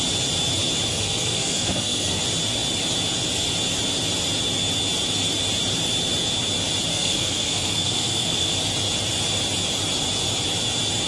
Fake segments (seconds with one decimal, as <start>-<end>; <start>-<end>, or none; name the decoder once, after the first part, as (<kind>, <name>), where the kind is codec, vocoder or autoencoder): 0.9-2.2 (codec, SNAC); 6.9-8.5